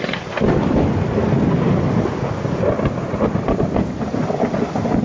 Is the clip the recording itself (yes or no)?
yes